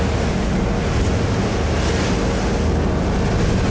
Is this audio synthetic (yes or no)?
no